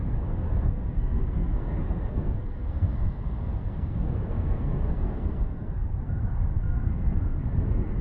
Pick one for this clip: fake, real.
fake